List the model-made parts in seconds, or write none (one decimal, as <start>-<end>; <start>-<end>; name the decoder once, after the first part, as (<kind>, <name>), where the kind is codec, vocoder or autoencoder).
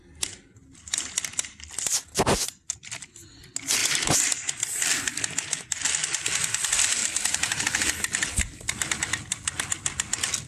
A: 3.8-4.5 (vocoder, BigVGAN v2); 7.0-7.6